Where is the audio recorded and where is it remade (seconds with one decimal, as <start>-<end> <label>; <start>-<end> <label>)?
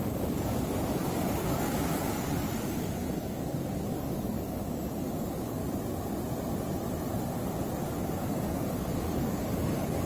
0.0-5.6 remade; 5.6-7.8 recorded; 7.8-10.1 remade